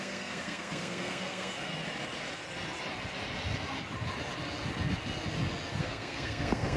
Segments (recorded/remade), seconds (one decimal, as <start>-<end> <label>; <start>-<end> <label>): 0.0-1.7 remade; 1.7-5.8 recorded; 5.8-6.8 remade